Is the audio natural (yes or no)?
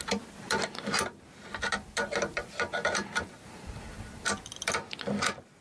yes